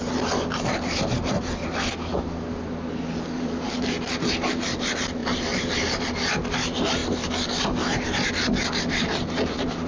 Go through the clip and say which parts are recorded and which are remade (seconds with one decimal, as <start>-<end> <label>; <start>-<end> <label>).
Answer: 0.0-5.2 recorded; 5.2-6.1 remade; 6.1-9.9 recorded